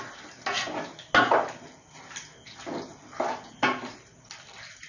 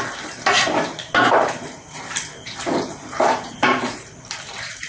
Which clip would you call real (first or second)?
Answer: first